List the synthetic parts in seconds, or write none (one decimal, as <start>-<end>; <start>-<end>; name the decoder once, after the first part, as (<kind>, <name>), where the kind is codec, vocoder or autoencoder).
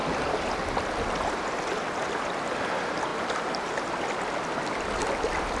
none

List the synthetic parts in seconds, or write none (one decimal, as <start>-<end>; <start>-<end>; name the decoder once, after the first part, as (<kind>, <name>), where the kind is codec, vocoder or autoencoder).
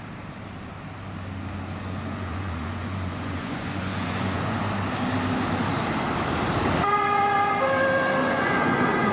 1.8-4.6 (vocoder, Vocos); 8.2-9.1